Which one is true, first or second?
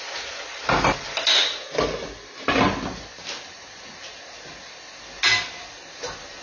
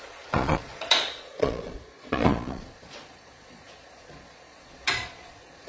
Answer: first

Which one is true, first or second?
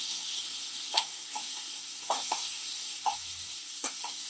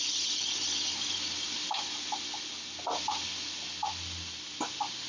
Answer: second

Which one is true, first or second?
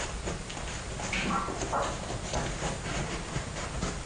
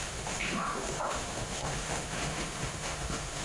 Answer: first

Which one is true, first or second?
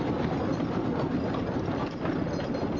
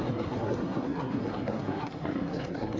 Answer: first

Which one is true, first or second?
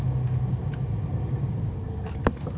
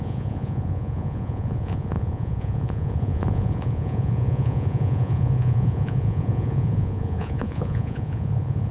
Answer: first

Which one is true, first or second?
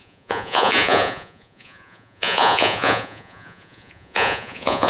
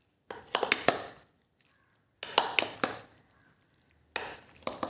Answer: second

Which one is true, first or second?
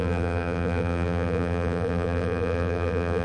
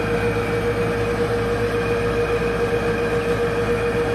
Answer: second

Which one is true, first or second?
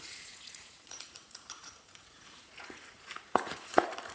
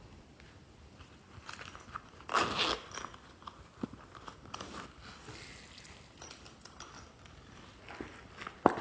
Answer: second